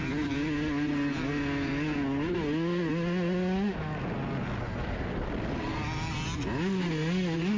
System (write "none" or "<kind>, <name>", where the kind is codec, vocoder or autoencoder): none